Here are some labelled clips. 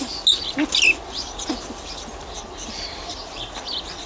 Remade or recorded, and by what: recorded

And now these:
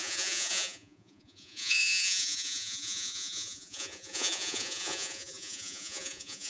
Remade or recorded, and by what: remade, vocoder, Vocos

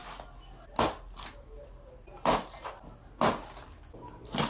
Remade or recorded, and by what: recorded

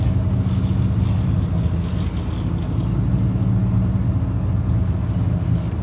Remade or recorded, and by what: recorded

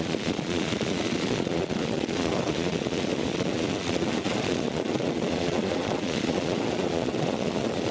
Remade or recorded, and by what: remade, vocoder, Vocos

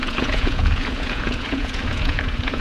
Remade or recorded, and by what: remade, vocoder, Vocos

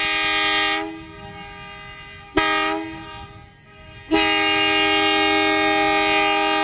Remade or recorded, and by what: recorded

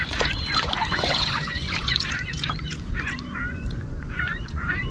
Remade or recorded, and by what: remade, vocoder, Vocos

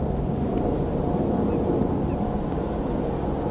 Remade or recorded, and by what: recorded